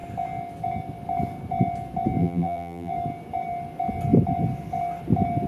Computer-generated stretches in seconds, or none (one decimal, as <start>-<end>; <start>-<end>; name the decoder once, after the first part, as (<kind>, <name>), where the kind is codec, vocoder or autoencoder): 2.2-2.9 (vocoder, BigVGAN v2)